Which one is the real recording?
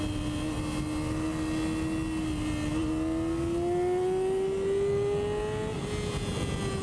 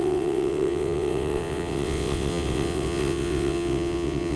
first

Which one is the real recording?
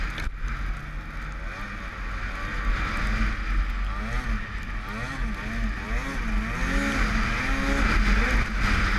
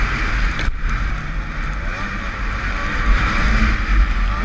first